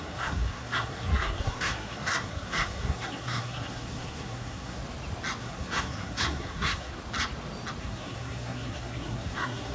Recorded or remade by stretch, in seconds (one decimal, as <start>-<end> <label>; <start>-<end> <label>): 0.0-4.8 remade; 4.8-5.4 recorded; 5.4-6.9 remade; 6.9-7.8 recorded; 7.8-9.7 remade